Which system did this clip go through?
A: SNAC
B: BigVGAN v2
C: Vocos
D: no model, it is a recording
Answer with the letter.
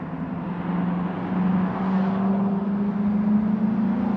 D